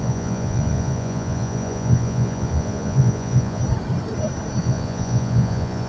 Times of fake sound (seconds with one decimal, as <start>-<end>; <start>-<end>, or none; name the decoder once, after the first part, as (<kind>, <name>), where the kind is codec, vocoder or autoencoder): 0.0-3.6 (vocoder, Vocos); 4.6-5.9